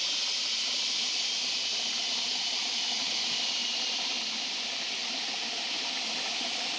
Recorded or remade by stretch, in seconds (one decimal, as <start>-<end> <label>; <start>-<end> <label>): 0.0-6.8 recorded